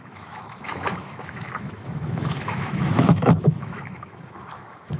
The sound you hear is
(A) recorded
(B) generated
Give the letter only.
B